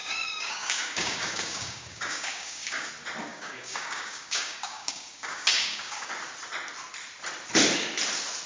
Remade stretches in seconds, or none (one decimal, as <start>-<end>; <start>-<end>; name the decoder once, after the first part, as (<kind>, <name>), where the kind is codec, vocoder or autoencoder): 0.0-2.9 (codec, DAC); 3.3-6.1